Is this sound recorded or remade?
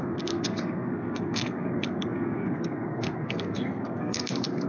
remade